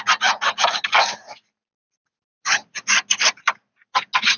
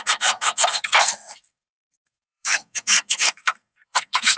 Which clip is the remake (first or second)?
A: second